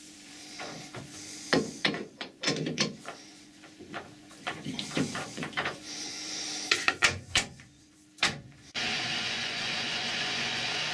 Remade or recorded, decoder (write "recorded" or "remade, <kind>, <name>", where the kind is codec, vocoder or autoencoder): remade, vocoder, Vocos